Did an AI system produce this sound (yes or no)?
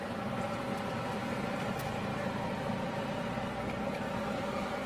yes